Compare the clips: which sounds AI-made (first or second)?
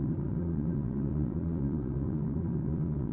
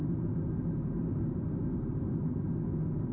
first